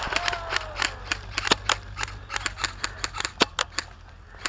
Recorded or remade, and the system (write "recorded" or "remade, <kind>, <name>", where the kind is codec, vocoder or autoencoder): recorded